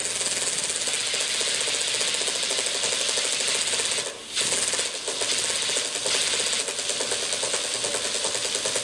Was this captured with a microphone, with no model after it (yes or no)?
yes